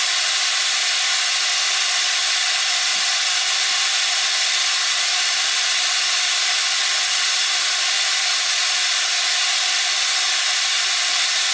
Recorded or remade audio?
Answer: recorded